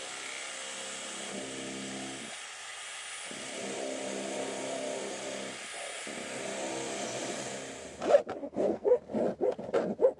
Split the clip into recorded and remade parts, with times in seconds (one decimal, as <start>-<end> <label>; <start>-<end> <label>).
0.0-8.4 recorded; 8.4-9.0 remade; 9.0-10.2 recorded